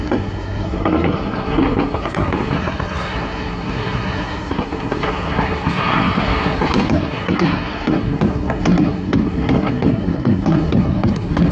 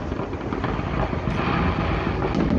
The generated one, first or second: first